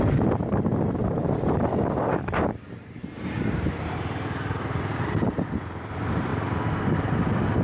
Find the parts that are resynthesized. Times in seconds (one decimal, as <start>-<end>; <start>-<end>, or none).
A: 1.0-4.0